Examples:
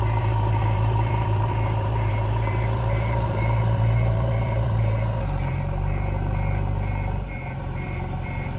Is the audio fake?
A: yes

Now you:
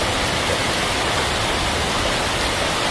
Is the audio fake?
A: no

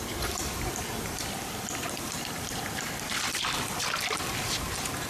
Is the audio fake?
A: yes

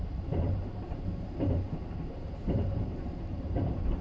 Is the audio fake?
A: yes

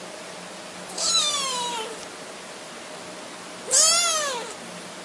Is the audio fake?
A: no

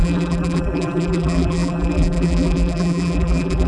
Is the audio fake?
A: yes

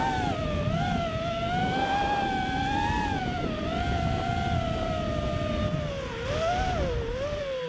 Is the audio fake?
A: no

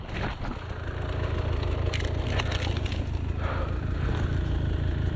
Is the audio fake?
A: no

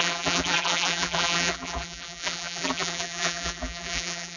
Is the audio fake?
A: yes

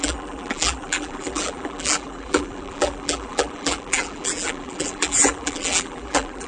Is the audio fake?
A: yes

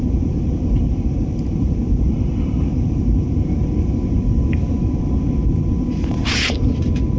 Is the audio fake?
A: yes